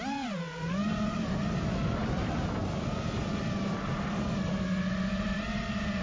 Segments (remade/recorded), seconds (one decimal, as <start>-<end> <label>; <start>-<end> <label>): 0.0-0.8 recorded; 0.8-1.3 remade; 1.3-2.0 recorded; 2.0-5.6 remade; 5.6-6.0 recorded